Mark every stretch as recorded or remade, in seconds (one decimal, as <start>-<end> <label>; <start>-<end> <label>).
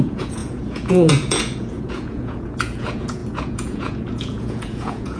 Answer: 0.0-5.2 remade